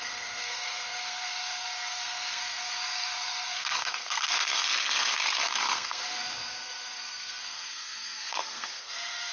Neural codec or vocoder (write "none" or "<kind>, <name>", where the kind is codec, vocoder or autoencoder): codec, SNAC